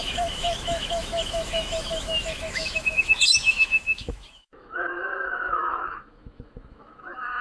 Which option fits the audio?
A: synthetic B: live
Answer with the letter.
A